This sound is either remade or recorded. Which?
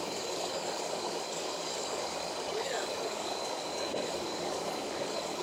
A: remade